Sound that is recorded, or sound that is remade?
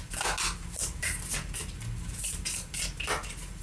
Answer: recorded